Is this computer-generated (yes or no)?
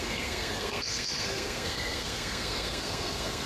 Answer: yes